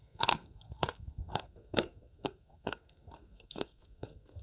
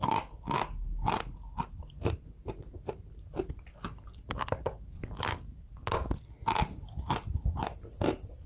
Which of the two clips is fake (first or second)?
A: first